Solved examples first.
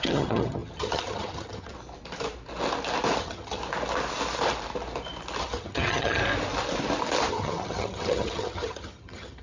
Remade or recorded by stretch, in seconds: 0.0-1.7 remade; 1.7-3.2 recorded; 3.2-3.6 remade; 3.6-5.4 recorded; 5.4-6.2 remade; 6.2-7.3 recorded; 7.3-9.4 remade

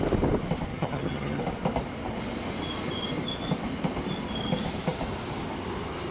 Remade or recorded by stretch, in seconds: 0.0-0.7 recorded; 0.7-1.4 remade; 1.4-6.1 recorded

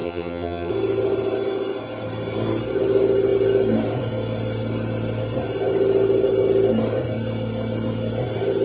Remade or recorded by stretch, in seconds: 0.0-0.7 remade; 0.7-8.6 recorded

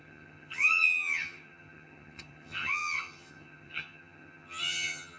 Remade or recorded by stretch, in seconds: 0.0-5.2 remade

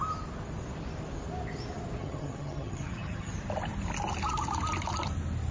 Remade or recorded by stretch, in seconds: 0.0-2.0 recorded; 2.0-3.3 remade; 3.3-5.5 recorded

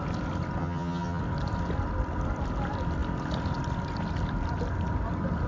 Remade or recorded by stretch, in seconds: 0.0-0.6 recorded; 0.6-1.2 remade; 1.2-5.5 recorded

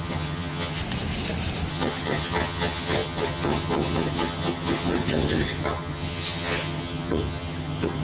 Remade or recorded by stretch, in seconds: 0.0-0.8 remade; 0.8-1.7 recorded; 1.7-8.0 remade

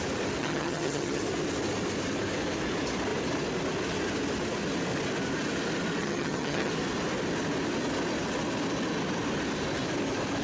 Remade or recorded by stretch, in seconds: 0.0-0.4 recorded; 0.4-1.2 remade; 1.2-6.0 recorded; 6.0-6.7 remade; 6.7-10.4 recorded